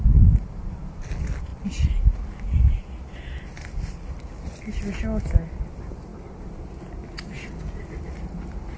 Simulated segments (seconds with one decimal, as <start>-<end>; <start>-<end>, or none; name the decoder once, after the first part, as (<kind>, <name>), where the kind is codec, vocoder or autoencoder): none